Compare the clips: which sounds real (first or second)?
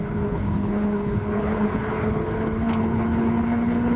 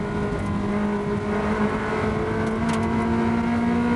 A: second